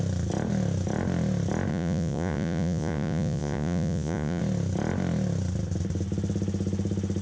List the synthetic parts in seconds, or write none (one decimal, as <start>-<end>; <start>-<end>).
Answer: 1.7-4.4